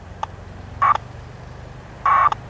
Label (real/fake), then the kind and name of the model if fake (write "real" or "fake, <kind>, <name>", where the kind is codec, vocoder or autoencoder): real